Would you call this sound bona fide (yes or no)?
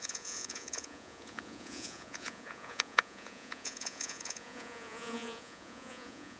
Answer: no